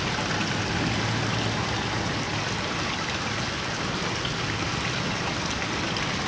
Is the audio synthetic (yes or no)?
no